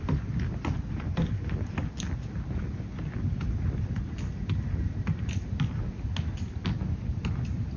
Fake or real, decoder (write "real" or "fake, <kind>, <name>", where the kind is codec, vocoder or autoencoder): real